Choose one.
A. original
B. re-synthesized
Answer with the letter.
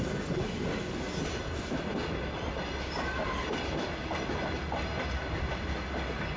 A